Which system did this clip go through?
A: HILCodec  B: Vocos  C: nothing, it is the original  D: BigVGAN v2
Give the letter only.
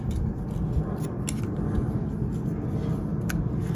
C